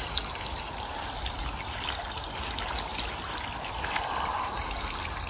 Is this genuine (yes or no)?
yes